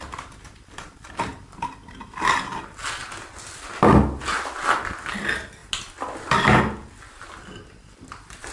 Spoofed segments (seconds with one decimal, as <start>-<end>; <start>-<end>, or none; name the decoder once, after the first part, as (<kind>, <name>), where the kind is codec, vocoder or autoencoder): none